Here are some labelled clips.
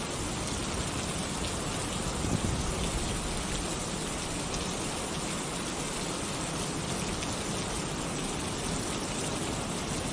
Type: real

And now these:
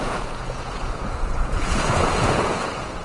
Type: fake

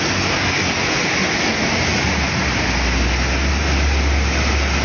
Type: real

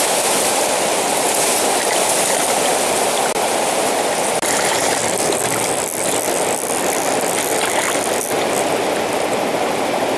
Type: real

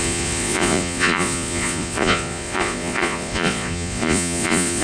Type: fake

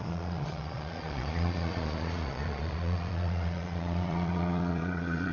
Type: fake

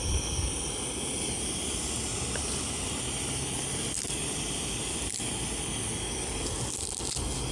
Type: real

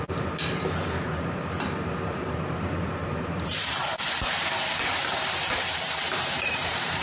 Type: fake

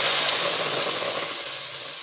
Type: fake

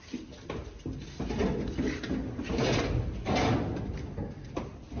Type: real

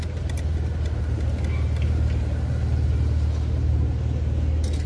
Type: real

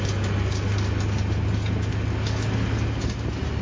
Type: real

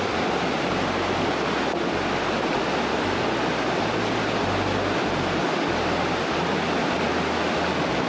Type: real